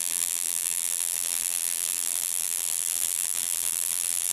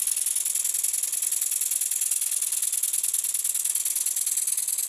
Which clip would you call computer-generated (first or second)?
first